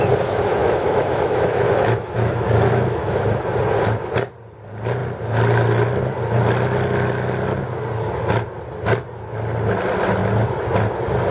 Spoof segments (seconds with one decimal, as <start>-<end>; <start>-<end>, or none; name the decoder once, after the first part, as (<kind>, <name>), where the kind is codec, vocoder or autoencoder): 0.6-3.2 (autoencoder, DAC-VAE)